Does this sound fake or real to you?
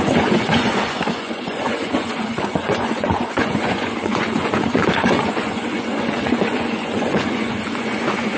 fake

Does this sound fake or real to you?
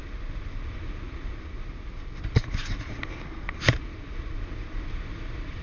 real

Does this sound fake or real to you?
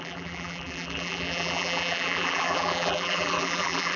fake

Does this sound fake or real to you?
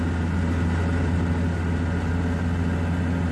real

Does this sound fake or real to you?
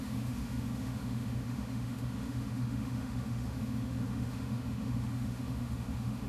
fake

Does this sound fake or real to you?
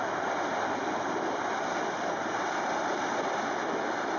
real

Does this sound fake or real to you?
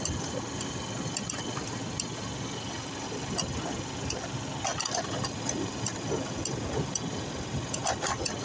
real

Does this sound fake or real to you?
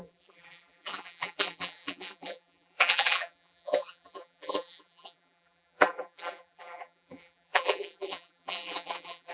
fake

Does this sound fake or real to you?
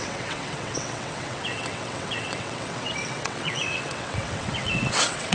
fake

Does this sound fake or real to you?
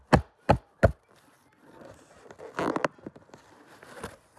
real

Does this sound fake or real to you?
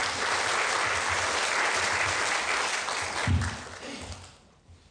real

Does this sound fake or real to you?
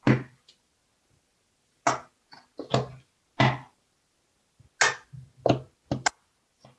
real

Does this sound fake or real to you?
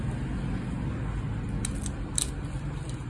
real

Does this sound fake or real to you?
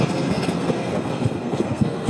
fake